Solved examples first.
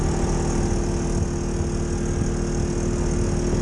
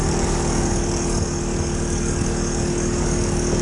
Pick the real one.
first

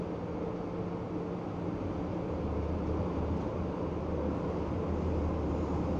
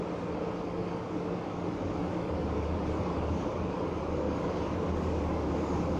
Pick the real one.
first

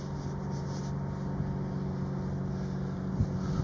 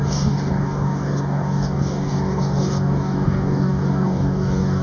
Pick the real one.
first